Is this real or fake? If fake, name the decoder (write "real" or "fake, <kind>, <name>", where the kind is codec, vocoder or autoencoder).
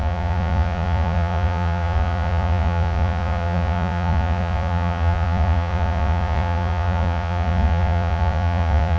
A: fake, vocoder, Vocos